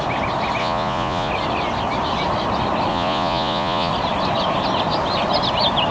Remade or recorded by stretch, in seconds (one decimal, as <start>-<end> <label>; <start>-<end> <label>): 0.0-0.6 recorded; 0.6-1.3 remade; 1.3-2.9 recorded; 2.9-3.9 remade; 3.9-5.9 recorded